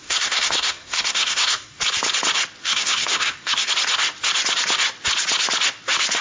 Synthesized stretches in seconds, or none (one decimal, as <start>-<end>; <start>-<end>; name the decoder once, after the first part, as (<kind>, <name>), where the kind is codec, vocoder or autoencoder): 0.0-1.8 (codec, SNAC); 2.6-3.7